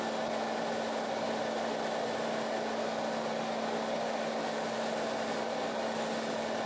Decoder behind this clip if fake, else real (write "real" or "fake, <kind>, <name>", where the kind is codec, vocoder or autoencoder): real